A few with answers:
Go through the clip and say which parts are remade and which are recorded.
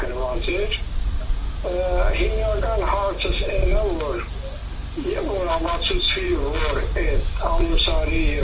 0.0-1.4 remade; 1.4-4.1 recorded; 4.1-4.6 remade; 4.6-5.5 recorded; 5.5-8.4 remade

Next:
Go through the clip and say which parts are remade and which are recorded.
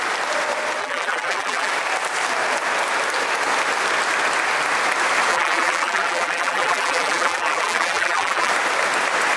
0.0-0.8 recorded; 0.8-1.7 remade; 1.7-5.3 recorded; 5.3-8.5 remade; 8.5-9.4 recorded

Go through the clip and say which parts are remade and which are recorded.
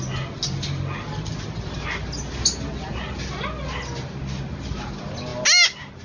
0.0-6.0 recorded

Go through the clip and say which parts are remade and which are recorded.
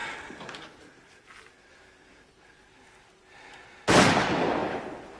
0.0-3.1 remade; 3.1-4.6 recorded; 4.6-5.2 remade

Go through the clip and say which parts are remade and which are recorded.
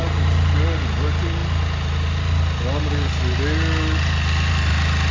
0.0-5.1 recorded